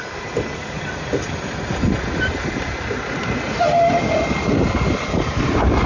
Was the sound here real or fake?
real